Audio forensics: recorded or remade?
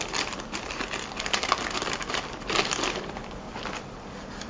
remade